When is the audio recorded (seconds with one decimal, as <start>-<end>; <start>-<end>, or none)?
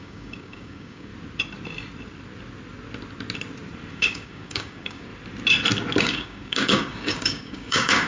1.1-3.9; 5.1-6.0